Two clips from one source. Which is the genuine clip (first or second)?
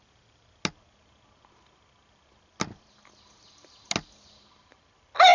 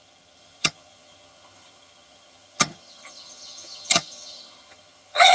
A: first